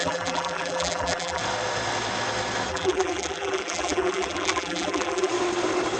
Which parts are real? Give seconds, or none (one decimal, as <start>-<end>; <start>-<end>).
1.4-2.7; 5.3-6.0